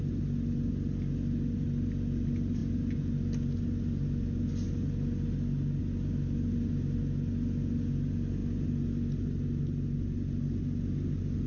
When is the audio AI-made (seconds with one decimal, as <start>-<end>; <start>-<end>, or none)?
none